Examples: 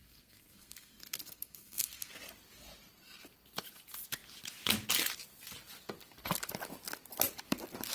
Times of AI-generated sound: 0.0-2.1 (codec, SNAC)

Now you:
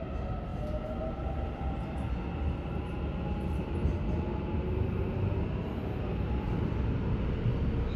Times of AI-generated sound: none

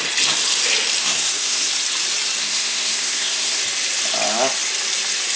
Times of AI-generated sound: 1.0-1.7 (codec, SNAC); 2.4-3.6

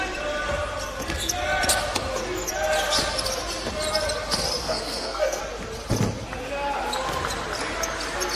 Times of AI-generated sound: 4.6-5.4 (codec, SNAC)